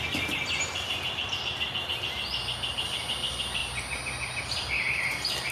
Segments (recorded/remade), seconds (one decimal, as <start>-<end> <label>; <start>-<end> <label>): 0.0-5.5 recorded